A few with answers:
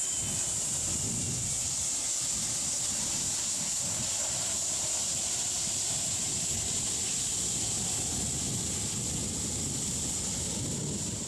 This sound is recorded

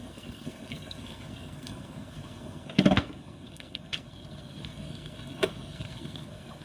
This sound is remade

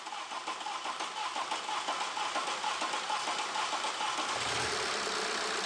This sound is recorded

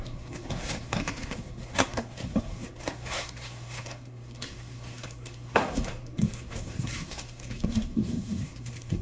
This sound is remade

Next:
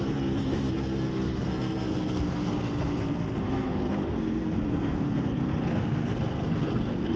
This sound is remade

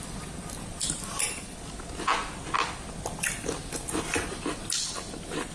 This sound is recorded